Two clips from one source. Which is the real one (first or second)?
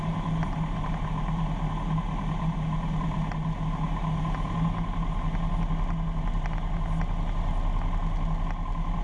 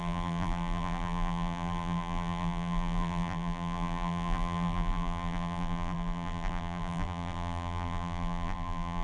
first